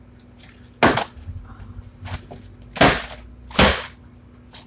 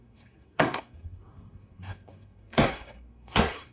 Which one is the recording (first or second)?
first